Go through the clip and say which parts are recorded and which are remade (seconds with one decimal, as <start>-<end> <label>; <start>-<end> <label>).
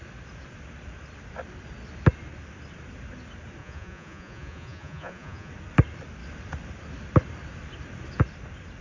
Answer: 0.0-3.6 recorded; 3.6-5.5 remade; 5.5-8.8 recorded